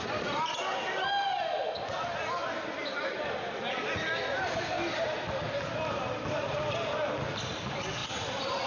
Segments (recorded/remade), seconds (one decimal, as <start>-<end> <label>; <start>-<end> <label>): 0.0-8.0 recorded; 8.0-8.7 remade